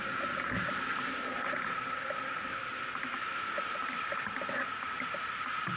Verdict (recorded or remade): recorded